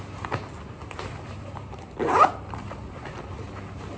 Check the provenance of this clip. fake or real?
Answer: real